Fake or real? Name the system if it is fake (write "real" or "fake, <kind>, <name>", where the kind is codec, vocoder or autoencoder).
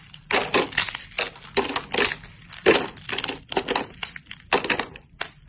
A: real